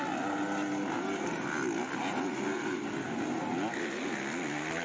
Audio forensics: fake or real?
real